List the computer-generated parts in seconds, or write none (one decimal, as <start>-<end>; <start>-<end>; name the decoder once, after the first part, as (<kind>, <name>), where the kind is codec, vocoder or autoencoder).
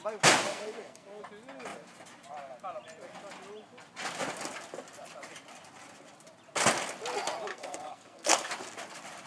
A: 0.5-1.2 (codec, SNAC); 7.5-8.5